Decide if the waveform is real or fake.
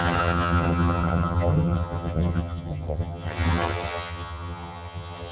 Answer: fake